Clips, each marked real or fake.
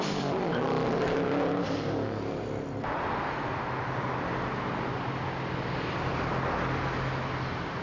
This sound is real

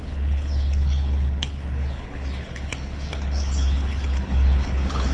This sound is fake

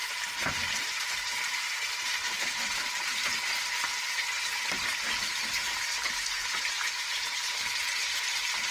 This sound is fake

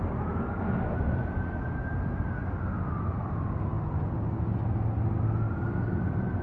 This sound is real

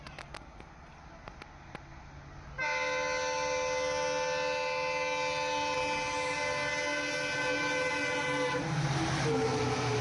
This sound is real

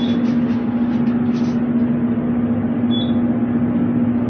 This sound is real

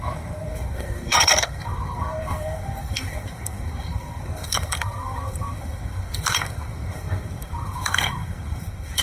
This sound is fake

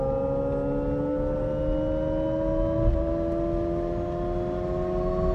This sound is real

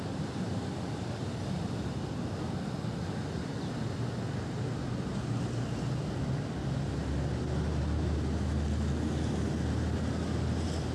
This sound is real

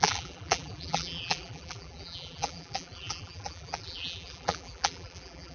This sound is fake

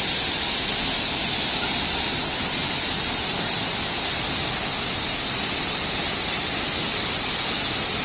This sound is real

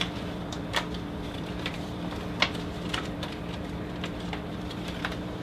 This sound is fake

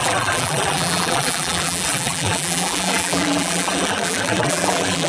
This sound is fake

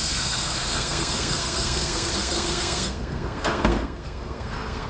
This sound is fake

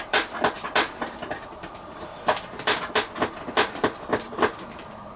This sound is real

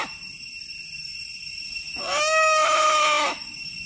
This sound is real